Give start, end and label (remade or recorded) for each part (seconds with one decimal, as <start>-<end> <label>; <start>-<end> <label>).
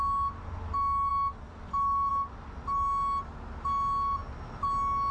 0.0-5.1 recorded